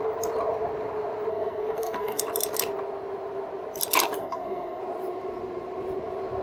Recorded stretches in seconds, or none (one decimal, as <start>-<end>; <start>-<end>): 0.0-1.3; 2.2-4.2; 4.8-6.4